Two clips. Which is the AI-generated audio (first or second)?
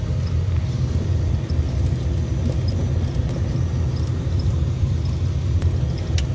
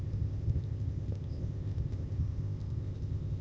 second